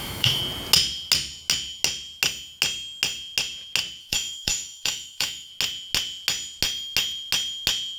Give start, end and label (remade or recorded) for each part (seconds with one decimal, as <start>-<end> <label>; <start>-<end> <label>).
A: 0.0-0.4 remade; 0.4-4.0 recorded; 4.0-5.5 remade; 5.5-8.0 recorded